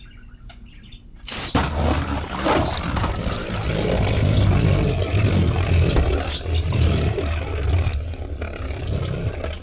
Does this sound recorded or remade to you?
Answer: recorded